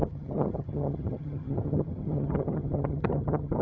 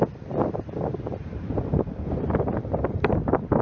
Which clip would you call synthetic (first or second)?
first